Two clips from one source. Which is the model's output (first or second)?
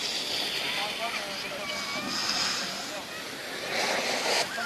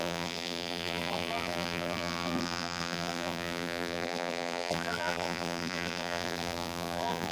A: second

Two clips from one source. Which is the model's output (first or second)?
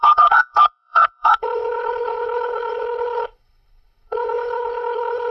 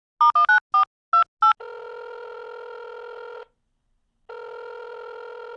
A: first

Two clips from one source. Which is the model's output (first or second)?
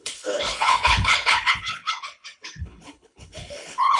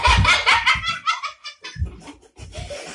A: first